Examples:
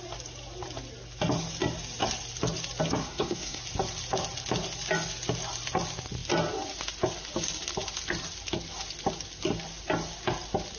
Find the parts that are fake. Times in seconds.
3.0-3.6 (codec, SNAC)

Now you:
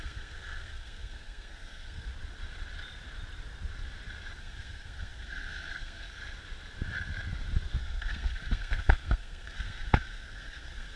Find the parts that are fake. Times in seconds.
0.0-2.1 (codec, SNAC); 4.4-6.2; 7.8-11.0